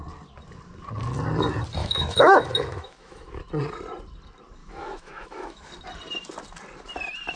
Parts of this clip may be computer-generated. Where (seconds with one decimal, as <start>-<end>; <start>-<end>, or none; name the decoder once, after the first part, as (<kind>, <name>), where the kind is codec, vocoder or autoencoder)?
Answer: 1.8-3.4 (autoencoder, DAC-VAE); 4.6-5.7